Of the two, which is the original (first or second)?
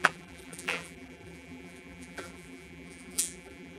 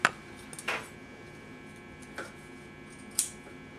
second